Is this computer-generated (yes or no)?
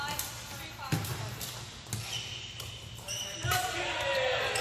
no